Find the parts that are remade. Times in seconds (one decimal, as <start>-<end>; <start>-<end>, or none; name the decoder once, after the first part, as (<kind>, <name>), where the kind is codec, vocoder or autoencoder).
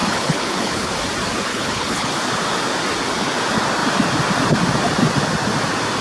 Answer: 0.0-0.9 (codec, HILCodec); 1.5-2.1